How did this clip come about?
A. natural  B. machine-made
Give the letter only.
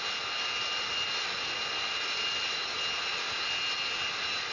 A